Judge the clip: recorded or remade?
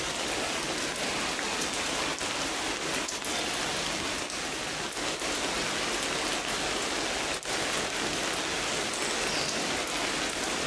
recorded